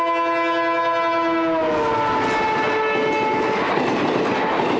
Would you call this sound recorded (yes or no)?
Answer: yes